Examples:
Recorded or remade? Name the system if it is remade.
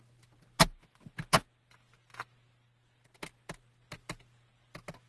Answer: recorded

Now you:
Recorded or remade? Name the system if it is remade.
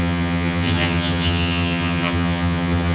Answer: remade, vocoder, HiFi-GAN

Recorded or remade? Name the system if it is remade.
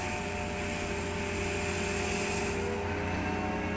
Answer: recorded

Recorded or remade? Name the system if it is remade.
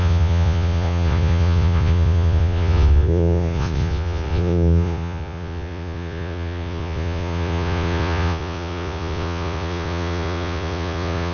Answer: remade, vocoder, Vocos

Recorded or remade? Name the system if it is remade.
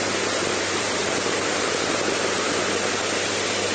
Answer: remade, vocoder, BigVGAN v2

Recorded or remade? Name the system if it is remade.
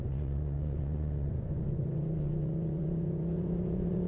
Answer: remade, vocoder, Vocos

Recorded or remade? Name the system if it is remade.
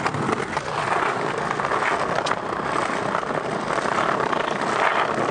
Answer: recorded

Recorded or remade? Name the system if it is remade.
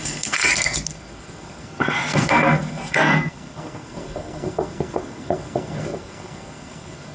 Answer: remade, codec, SNAC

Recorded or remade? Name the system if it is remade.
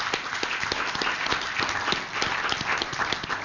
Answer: recorded